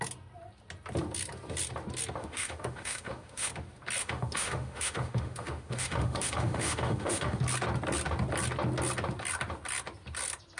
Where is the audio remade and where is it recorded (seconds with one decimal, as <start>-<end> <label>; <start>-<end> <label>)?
0.0-2.2 recorded; 2.2-3.5 remade; 3.5-4.0 recorded; 4.0-7.4 remade; 7.4-10.6 recorded